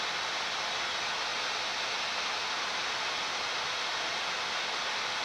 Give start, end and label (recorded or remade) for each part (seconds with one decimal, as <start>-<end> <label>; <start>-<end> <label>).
0.0-5.2 recorded

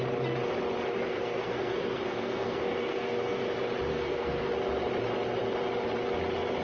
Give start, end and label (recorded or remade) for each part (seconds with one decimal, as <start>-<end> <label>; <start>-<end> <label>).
0.0-0.9 recorded; 0.9-3.4 remade; 3.4-3.9 recorded; 3.9-4.5 remade; 4.5-6.6 recorded

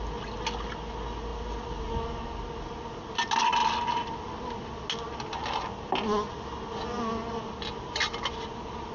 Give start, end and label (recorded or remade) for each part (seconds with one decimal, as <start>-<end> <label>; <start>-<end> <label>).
0.0-8.9 recorded

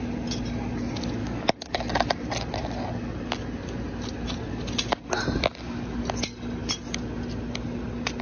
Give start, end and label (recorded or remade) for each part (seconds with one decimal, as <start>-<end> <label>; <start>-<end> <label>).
0.0-1.2 recorded; 1.2-1.9 remade; 1.9-8.2 recorded

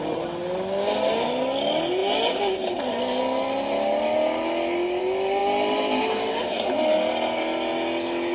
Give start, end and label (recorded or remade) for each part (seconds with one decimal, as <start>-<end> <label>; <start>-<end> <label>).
0.0-8.3 recorded

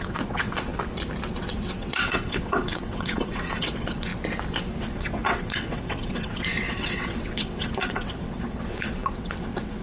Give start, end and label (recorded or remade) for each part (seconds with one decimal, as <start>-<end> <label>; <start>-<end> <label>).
0.0-0.7 remade; 0.7-1.3 recorded; 1.3-4.1 remade; 4.1-4.8 recorded; 4.8-9.8 remade

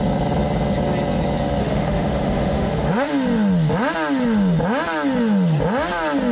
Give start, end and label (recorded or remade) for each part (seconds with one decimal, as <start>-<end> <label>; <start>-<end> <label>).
0.0-1.6 recorded; 1.6-3.1 remade; 3.1-6.3 recorded

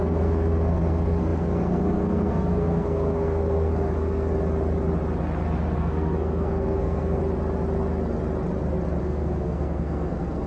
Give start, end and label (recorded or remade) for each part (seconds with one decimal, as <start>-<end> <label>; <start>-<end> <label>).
0.0-4.3 remade; 4.3-5.8 recorded; 5.8-7.2 remade; 7.2-9.0 recorded; 9.0-10.5 remade